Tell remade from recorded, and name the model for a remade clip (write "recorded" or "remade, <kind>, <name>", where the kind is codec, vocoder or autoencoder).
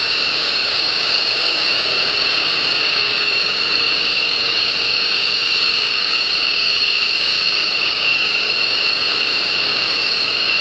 remade, codec, DAC